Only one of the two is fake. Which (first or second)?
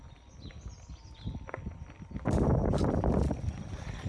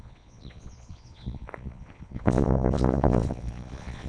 second